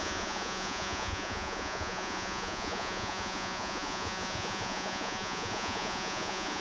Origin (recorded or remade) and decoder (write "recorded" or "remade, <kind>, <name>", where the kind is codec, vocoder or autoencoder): remade, vocoder, Vocos